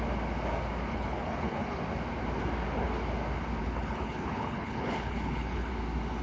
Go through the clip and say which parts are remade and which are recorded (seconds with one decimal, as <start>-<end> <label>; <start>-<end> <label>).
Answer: 0.0-0.9 recorded; 0.9-1.8 remade; 1.8-3.6 recorded; 3.6-5.7 remade; 5.7-6.2 recorded